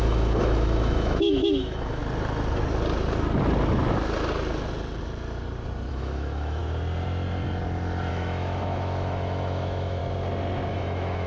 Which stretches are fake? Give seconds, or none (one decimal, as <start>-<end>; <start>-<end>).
0.0-2.0; 5.9-6.6; 8.1-10.0; 10.7-11.3